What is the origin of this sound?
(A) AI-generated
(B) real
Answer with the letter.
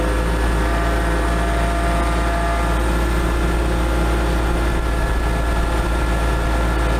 B